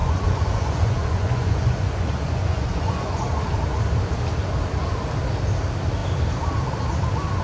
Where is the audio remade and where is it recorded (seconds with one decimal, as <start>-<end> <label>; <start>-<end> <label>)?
0.0-3.3 remade; 3.3-7.4 recorded